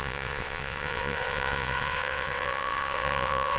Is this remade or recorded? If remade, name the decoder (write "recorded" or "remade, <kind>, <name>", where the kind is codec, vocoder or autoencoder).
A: remade, vocoder, WaveNeXt